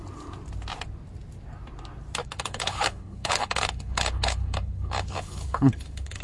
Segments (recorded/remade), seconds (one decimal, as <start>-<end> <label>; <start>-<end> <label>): 0.0-2.2 recorded; 2.2-6.2 remade